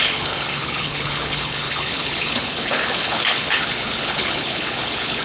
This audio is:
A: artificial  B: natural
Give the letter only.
A